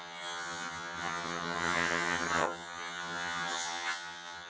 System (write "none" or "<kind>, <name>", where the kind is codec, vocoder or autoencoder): vocoder, HiFi-GAN